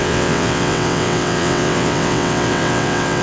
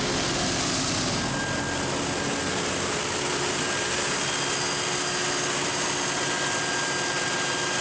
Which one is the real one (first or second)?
second